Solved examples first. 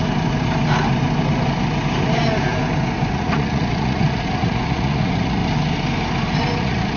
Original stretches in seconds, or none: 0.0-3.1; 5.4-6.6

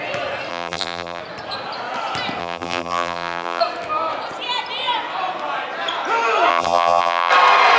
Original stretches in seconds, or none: 0.0-0.5; 1.2-2.4; 3.6-6.5; 7.3-7.8

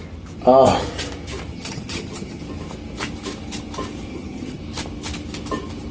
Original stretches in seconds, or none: 0.0-1.5; 2.4-4.1; 4.6-5.9

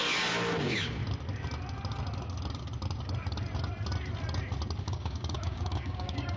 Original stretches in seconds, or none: 0.0-0.6; 1.0-4.8

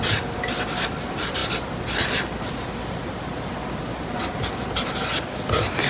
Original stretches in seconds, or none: 0.0-5.9